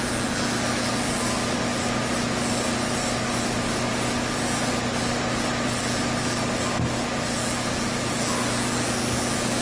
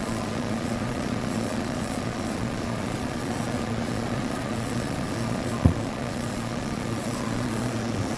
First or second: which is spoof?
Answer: second